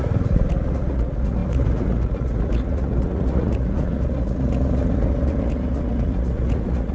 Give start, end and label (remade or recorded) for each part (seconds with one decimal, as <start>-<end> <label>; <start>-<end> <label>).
0.0-6.9 remade